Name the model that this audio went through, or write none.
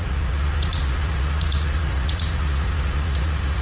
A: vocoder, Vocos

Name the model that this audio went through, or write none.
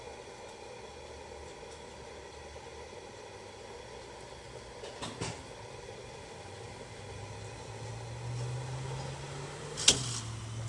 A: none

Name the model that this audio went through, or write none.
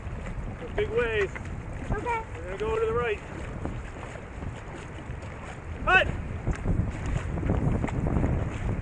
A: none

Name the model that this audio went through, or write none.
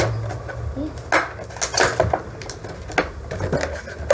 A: none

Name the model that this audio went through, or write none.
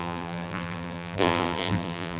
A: vocoder, BigVGAN v2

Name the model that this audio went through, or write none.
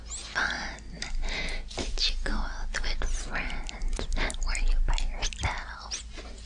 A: none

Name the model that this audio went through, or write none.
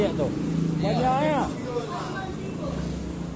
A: none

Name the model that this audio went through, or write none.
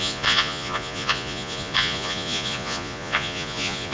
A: vocoder, Vocos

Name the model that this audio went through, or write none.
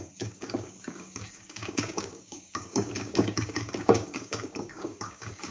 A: codec, DAC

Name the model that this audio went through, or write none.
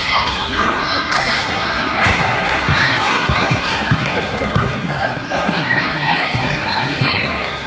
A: codec, SNAC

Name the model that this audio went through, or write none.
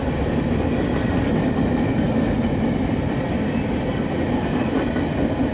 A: vocoder, BigVGAN v2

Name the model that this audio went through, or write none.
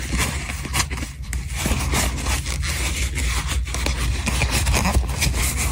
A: none